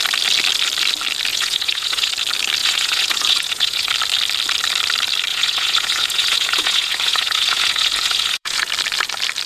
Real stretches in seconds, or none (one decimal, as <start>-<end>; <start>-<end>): 0.0-1.3; 2.1-2.6; 3.9-5.3; 8.7-9.5